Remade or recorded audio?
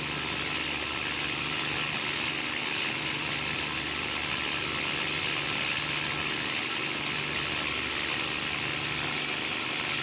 recorded